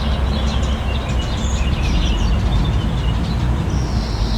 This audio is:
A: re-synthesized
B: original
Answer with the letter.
B